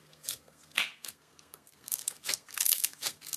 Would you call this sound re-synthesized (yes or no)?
yes